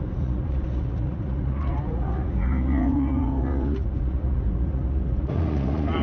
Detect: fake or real fake